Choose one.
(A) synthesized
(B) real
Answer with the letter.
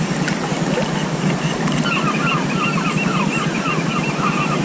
B